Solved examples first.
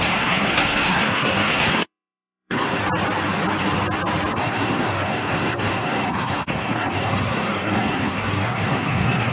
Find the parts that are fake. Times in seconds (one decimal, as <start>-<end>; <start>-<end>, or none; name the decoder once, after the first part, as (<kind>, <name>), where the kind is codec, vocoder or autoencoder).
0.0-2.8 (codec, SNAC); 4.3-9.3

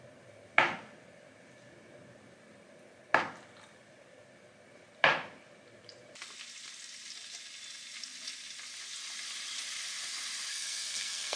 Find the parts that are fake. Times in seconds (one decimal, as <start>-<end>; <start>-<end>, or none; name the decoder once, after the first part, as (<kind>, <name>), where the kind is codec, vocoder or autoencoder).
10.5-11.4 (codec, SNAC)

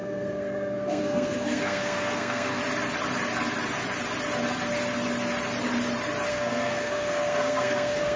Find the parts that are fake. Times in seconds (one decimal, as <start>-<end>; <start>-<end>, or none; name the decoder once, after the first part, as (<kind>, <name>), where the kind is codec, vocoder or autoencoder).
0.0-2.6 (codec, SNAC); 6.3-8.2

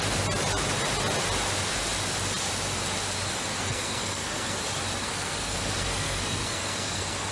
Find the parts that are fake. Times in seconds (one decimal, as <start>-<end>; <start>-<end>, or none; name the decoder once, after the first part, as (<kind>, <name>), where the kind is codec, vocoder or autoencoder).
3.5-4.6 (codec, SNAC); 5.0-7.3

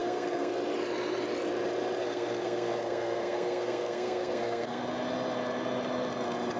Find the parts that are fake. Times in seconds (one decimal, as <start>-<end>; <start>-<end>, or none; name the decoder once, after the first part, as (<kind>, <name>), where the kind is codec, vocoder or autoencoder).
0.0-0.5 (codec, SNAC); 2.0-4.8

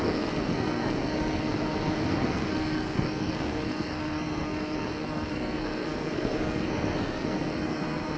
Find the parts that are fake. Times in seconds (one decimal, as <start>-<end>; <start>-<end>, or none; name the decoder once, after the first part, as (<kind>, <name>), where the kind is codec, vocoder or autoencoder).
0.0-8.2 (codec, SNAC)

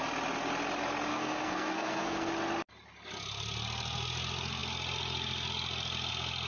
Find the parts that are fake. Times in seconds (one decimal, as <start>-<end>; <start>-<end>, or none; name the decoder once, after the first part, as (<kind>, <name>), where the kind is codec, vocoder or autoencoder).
1.1-2.3 (codec, SNAC)